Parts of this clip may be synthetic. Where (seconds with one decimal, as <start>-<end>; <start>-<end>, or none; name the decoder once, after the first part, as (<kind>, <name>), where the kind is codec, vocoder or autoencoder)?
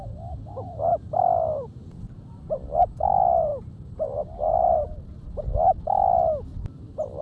0.9-2.8 (vocoder, BigVGAN v2); 3.5-5.4